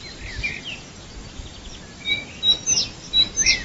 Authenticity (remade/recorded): recorded